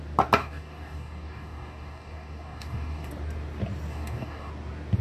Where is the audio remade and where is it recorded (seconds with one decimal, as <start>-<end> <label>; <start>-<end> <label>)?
0.0-0.4 recorded; 0.4-3.1 remade; 3.1-3.9 recorded; 3.9-4.5 remade; 4.5-5.0 recorded